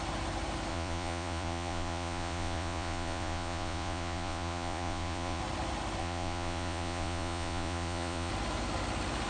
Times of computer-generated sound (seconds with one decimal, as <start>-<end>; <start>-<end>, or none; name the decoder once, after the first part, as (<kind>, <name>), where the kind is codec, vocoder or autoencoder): 0.7-5.4 (vocoder, Vocos); 6.0-8.3